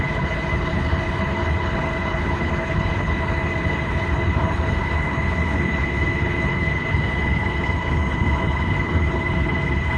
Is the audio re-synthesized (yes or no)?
yes